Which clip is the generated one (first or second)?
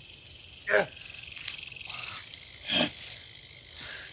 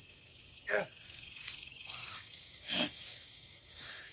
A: second